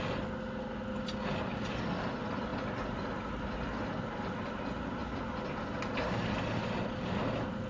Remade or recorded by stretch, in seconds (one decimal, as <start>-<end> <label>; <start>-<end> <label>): 0.0-7.7 recorded